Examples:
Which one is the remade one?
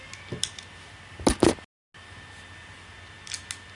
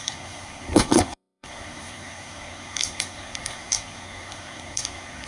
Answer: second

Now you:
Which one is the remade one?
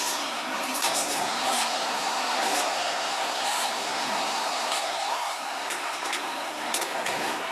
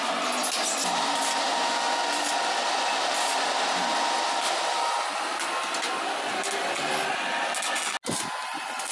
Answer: first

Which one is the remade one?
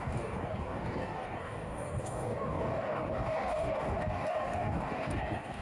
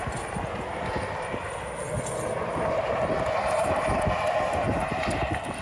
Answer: first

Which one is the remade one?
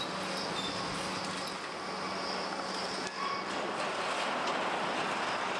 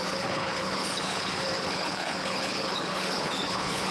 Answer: second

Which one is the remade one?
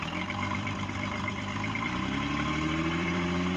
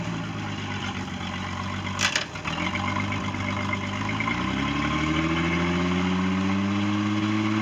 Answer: first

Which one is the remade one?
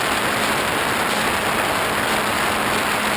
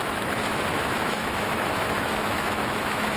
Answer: second